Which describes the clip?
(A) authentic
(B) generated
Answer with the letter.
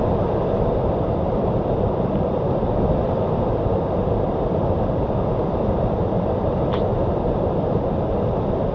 B